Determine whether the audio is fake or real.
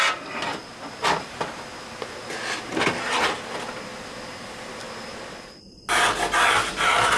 real